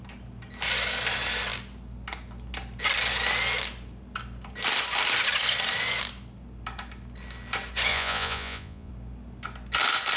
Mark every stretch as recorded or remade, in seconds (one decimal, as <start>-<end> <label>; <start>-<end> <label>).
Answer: 0.0-7.9 recorded; 7.9-8.9 remade; 8.9-10.2 recorded